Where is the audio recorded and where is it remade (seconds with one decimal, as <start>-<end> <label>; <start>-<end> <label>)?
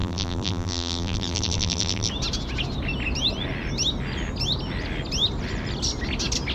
0.0-2.1 remade; 2.1-6.5 recorded